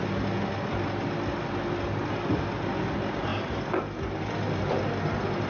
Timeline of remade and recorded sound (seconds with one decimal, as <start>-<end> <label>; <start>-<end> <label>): 0.0-5.5 recorded